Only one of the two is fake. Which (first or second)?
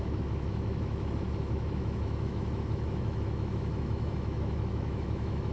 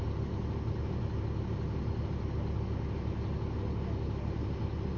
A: first